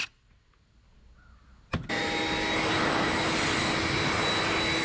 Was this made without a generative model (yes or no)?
yes